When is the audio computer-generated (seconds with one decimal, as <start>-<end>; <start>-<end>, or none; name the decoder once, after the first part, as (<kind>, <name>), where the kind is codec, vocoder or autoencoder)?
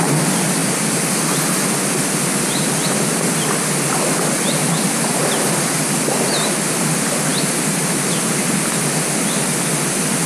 none